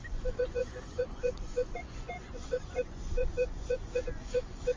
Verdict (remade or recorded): remade